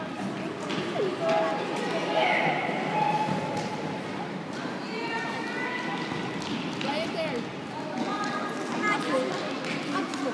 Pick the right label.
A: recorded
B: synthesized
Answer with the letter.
A